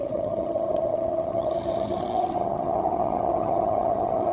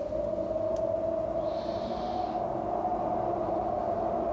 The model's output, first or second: first